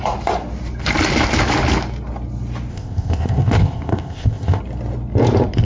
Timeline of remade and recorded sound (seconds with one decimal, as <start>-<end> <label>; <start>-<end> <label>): 0.0-2.7 recorded; 2.7-4.6 remade; 4.6-5.6 recorded